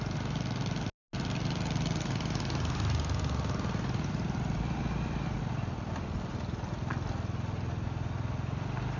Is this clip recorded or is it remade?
recorded